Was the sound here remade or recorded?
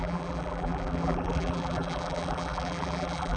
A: remade